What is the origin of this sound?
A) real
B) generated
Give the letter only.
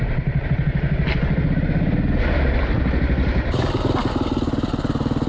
A